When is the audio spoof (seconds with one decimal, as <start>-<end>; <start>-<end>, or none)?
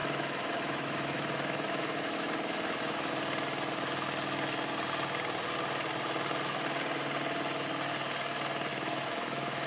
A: 0.0-3.1; 8.7-9.7